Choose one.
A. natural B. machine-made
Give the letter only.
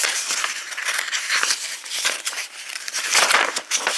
B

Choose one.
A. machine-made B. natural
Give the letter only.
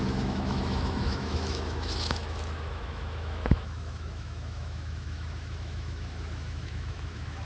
A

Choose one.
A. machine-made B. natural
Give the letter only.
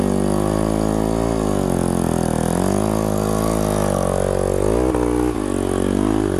B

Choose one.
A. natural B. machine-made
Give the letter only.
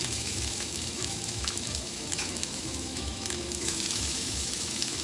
B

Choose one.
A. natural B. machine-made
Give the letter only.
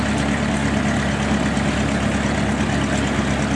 A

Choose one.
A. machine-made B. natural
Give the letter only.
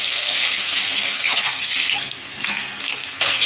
A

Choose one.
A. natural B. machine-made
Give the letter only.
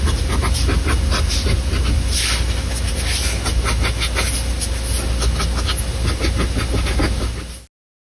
A